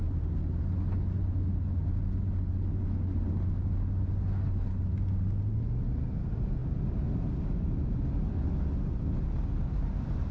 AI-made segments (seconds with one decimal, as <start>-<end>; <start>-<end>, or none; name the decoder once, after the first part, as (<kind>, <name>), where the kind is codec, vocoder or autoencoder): none